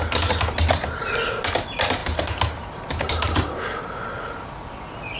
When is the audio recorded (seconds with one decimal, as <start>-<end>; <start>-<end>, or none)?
0.0-5.2